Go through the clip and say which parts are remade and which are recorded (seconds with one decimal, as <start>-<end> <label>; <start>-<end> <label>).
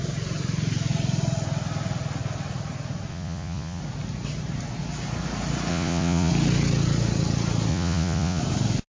0.0-3.1 recorded; 3.1-3.8 remade; 3.8-5.7 recorded; 5.7-6.3 remade; 6.3-7.7 recorded; 7.7-8.4 remade; 8.4-8.9 recorded